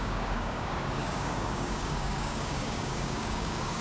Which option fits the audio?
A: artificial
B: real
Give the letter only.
A